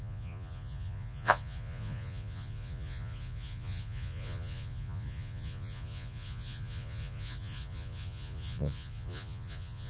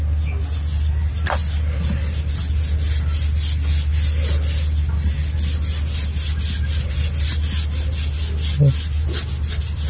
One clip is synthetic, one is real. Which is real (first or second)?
second